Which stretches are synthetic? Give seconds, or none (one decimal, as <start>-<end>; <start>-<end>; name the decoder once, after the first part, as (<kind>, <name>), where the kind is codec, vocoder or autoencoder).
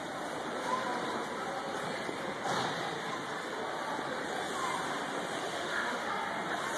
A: 5.5-6.1 (autoencoder, DAC-VAE)